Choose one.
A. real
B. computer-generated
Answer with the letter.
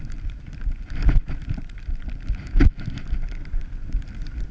A